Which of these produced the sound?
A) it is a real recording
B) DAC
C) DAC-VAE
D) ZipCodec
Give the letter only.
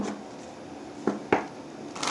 A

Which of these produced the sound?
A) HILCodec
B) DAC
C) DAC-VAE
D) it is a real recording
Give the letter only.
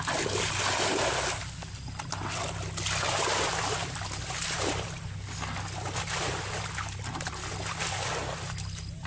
D